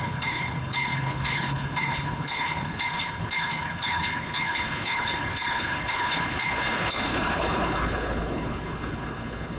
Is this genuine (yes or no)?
no